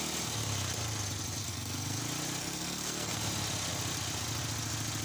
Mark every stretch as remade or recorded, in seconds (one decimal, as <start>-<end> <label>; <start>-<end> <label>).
0.0-1.4 recorded; 1.4-2.0 remade; 2.0-2.4 recorded; 2.4-3.2 remade; 3.2-5.0 recorded